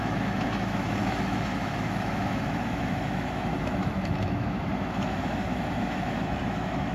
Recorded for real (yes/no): no